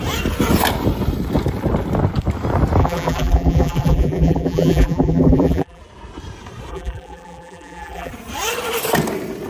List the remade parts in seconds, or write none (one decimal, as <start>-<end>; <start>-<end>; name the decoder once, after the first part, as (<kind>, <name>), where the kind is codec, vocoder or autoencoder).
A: 2.8-5.8 (vocoder, BigVGAN v2); 6.7-8.1